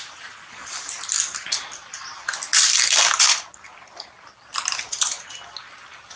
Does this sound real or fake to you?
real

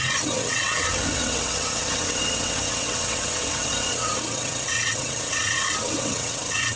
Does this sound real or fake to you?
fake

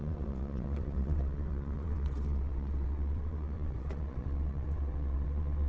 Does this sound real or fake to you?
fake